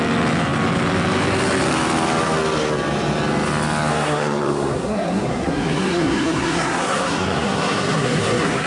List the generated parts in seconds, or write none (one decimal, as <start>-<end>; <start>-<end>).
3.9-8.7